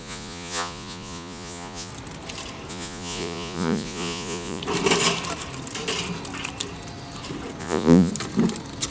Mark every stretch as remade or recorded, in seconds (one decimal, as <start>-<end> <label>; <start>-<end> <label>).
0.0-1.9 remade; 1.9-2.7 recorded; 2.7-4.6 remade; 4.6-7.6 recorded; 7.6-8.1 remade; 8.1-8.9 recorded